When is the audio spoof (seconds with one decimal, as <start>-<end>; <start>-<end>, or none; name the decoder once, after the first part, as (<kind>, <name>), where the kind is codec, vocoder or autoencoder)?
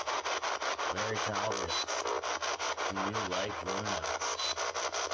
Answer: none